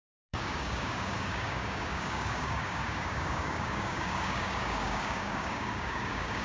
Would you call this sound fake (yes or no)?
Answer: yes